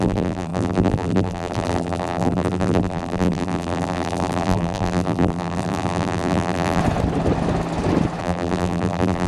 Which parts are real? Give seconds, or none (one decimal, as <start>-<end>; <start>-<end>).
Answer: 6.8-8.2